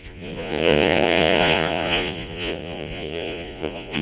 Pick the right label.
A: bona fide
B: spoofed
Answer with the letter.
B